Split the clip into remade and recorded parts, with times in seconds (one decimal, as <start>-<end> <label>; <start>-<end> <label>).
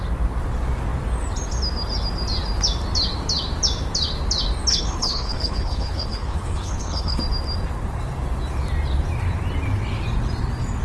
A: 0.0-4.7 recorded; 4.7-7.2 remade; 7.2-10.8 recorded